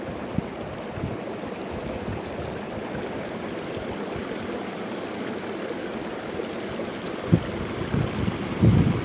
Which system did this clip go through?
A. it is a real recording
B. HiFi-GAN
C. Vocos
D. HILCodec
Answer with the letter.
A